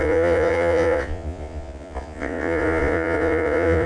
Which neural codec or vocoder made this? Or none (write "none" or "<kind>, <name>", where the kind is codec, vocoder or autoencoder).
vocoder, Vocos